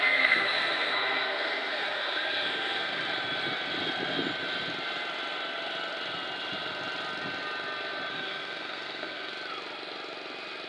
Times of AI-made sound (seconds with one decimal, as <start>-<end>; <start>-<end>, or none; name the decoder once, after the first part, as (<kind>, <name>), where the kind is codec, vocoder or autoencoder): 0.0-3.0 (codec, SNAC); 8.1-9.3